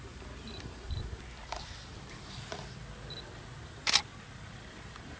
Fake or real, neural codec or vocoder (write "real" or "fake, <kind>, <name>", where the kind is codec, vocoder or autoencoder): real